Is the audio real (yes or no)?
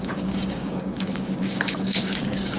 no